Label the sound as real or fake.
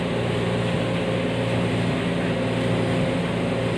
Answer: real